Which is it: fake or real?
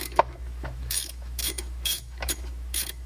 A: fake